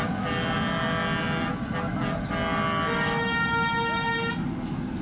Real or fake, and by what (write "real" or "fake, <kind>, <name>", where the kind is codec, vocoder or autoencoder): real